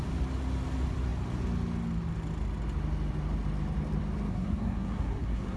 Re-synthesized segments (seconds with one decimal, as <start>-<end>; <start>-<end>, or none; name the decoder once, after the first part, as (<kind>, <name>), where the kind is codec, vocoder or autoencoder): 4.3-5.6 (codec, SNAC)